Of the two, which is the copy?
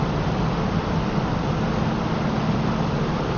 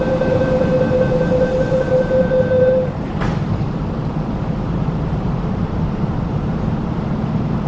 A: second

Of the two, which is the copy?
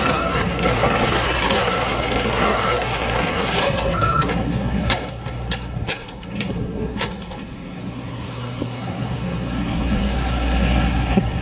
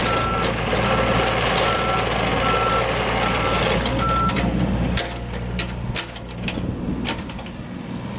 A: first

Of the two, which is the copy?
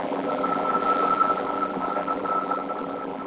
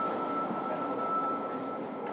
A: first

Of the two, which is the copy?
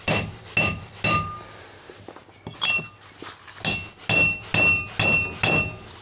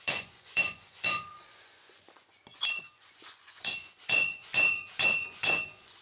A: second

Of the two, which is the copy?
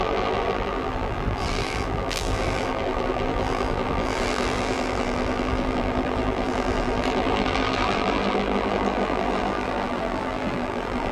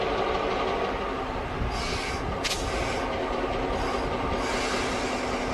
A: first